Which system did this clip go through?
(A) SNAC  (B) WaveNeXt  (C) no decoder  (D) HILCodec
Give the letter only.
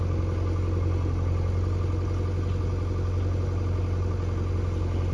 C